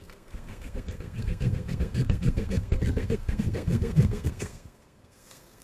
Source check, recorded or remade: remade